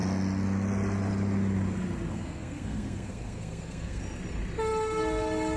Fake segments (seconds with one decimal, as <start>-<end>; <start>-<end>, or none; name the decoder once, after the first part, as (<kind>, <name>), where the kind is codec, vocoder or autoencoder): 2.1-4.0 (codec, SNAC)